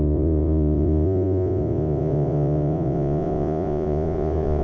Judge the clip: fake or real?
fake